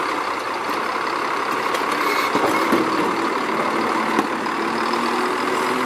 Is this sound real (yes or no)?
yes